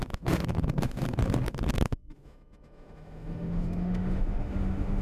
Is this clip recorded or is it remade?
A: remade